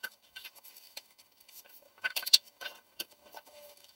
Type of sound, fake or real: fake